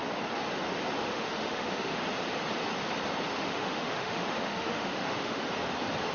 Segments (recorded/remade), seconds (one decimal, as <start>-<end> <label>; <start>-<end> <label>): 0.0-1.0 recorded; 1.0-2.0 remade; 2.0-3.3 recorded; 3.3-5.4 remade; 5.4-6.1 recorded